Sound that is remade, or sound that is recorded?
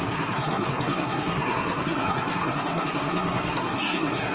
remade